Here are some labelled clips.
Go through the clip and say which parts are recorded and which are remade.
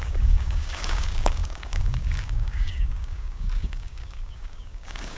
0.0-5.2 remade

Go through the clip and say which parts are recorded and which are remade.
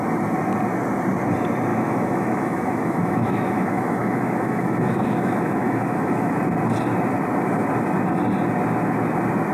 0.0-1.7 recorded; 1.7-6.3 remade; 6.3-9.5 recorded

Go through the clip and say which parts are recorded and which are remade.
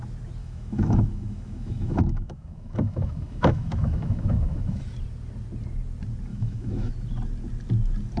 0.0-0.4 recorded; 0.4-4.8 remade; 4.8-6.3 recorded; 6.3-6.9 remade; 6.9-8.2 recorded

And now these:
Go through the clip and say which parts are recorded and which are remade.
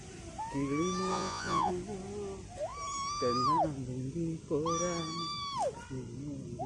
0.0-1.1 recorded; 1.1-1.7 remade; 1.7-6.7 recorded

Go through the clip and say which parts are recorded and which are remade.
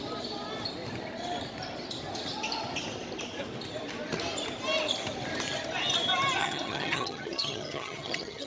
0.0-6.4 recorded; 6.4-8.5 remade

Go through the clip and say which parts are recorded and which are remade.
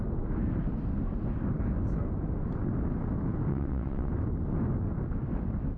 0.0-3.5 recorded; 3.5-4.1 remade; 4.1-5.8 recorded